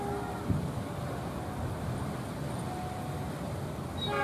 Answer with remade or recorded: recorded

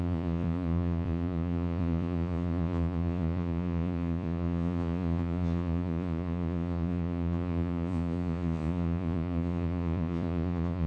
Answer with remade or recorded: remade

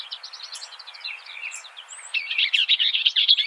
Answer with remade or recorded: remade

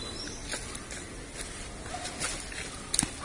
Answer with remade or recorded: recorded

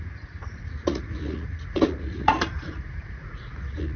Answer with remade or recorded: remade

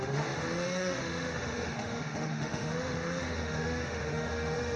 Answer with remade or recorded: remade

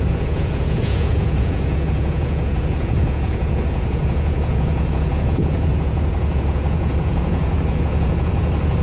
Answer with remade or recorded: remade